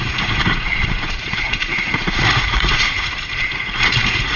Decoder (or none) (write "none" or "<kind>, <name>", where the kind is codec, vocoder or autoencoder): vocoder, Vocos